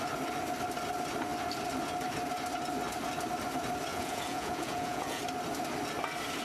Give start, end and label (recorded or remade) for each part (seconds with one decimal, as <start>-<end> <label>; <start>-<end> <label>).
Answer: 0.0-3.9 recorded; 3.9-5.2 remade; 5.2-6.4 recorded